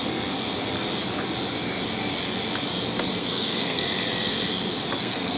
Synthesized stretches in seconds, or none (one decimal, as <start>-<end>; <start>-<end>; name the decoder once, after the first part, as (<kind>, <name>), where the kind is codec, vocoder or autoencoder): 3.2-3.8 (codec, SNAC); 5.0-5.4